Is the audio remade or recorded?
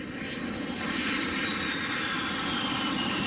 recorded